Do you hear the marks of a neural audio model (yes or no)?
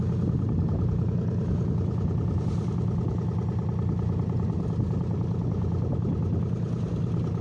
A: no